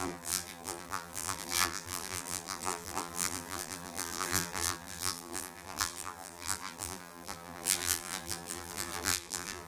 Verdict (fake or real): fake